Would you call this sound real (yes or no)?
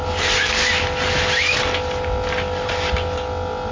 yes